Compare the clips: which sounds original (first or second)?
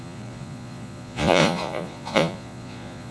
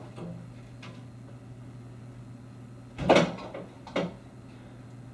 second